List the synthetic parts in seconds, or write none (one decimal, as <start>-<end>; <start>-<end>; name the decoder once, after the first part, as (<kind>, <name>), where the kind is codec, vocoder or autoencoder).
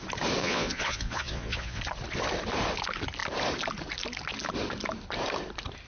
0.4-1.8 (vocoder, Vocos)